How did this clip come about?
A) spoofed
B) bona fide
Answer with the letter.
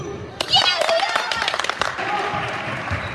A